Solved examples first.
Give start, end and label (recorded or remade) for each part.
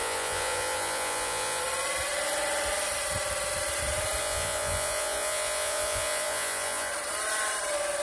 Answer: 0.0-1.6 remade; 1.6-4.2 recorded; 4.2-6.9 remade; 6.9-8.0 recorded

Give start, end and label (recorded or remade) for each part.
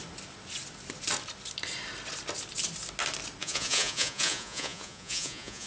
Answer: 0.0-3.4 recorded; 3.4-5.7 remade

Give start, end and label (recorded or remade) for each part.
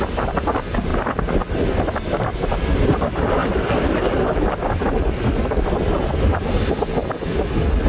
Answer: 0.0-7.9 recorded